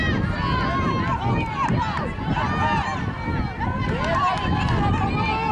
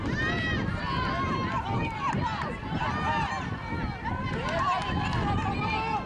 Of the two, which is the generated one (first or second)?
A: second